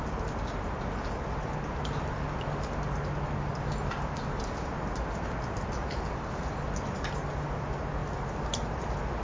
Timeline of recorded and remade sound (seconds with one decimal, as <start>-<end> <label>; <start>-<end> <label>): 0.0-9.2 recorded